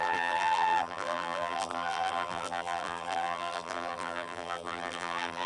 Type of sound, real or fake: fake